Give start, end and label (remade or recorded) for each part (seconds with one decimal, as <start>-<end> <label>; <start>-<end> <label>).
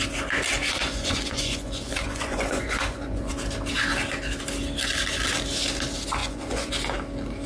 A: 0.0-0.6 recorded; 0.6-3.3 remade; 3.3-6.2 recorded; 6.2-6.7 remade; 6.7-7.5 recorded